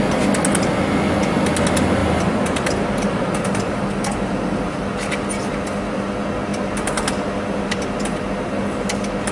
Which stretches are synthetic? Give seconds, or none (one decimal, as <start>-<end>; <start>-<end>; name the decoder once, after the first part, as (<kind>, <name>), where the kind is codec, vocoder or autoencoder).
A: 2.0-4.9 (vocoder, BigVGAN v2); 6.5-8.9